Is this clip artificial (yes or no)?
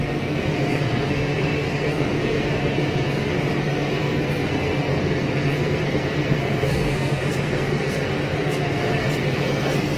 yes